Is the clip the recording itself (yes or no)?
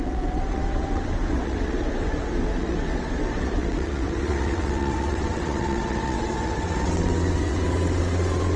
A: no